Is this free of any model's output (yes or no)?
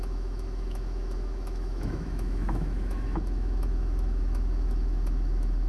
no